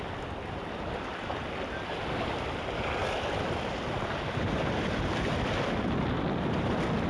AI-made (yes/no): no